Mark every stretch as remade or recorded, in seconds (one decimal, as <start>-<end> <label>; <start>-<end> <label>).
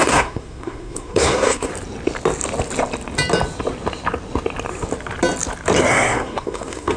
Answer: 0.0-1.7 remade; 1.7-5.9 recorded; 5.9-7.0 remade